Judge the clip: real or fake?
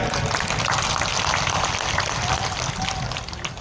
real